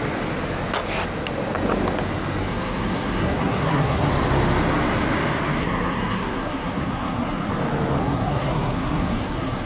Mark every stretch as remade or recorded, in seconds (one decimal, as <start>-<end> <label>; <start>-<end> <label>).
0.0-2.4 recorded; 2.4-4.1 remade; 4.1-5.6 recorded; 5.6-7.5 remade; 7.5-8.0 recorded; 8.0-9.7 remade